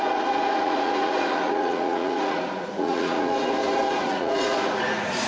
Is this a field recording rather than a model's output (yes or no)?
no